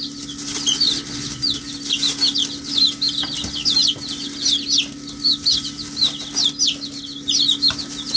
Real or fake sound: real